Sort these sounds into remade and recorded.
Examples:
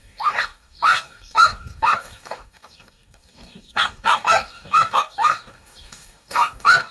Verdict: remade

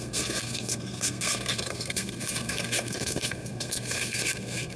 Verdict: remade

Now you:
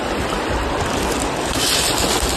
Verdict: recorded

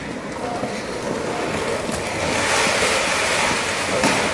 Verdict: recorded